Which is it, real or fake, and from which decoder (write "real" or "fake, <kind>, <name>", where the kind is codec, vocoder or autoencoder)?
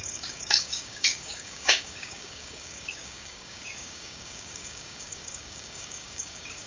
fake, codec, DAC